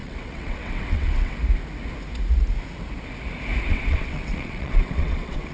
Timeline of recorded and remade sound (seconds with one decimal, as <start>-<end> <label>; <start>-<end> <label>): 0.0-1.3 remade; 1.3-3.7 recorded; 3.7-5.5 remade